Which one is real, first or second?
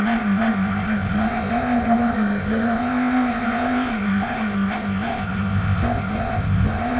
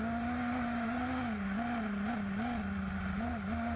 second